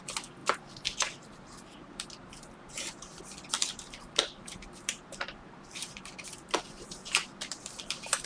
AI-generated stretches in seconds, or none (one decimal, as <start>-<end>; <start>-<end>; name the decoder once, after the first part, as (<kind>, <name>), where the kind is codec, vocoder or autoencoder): 0.4-3.2 (vocoder, BigVGAN v2); 3.6-8.3